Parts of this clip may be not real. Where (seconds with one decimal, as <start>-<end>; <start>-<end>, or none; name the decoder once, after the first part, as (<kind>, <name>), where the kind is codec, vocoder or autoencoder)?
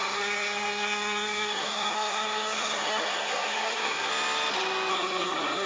0.0-4.1 (codec, SNAC); 4.9-5.7